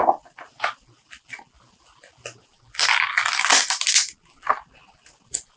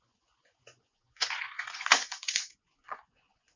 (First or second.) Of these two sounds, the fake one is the second